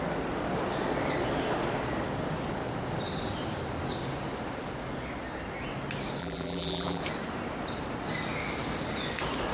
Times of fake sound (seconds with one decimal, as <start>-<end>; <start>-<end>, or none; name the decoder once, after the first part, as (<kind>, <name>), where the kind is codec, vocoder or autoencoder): 6.2-7.0 (vocoder, BigVGAN v2)